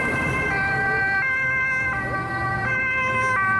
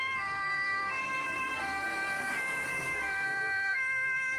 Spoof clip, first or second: second